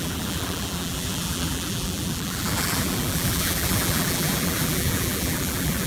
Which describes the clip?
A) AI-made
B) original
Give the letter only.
A